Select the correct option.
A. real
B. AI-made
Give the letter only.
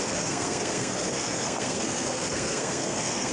B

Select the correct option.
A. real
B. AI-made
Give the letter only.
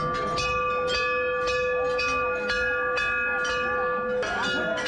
A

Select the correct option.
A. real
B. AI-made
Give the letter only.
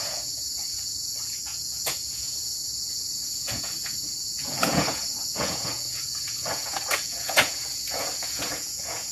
B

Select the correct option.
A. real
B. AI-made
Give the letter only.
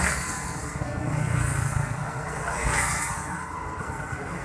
B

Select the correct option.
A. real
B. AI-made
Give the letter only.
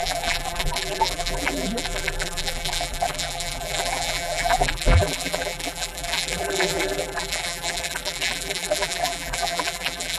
B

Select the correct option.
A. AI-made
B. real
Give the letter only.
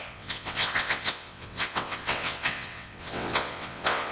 A